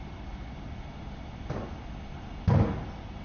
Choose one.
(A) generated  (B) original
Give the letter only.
B